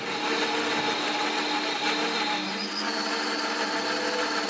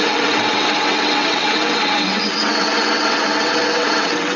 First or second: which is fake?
second